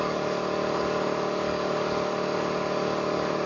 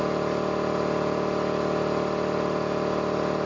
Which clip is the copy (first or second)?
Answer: first